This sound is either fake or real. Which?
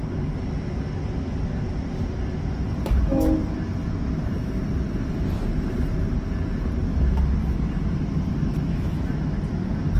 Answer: real